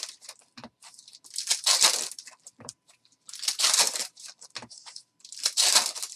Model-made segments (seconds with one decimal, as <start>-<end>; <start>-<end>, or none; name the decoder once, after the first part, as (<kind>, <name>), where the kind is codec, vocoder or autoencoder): 0.0-6.2 (vocoder, BigVGAN v2)